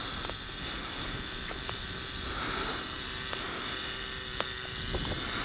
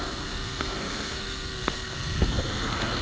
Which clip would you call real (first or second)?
first